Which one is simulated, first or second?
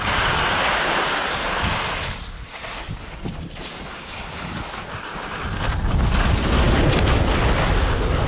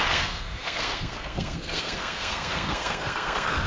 second